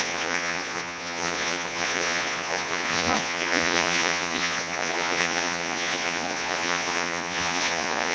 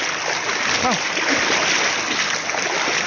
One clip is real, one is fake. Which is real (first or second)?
second